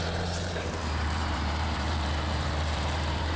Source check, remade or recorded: remade